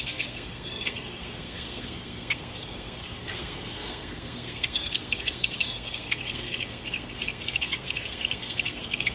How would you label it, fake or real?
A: fake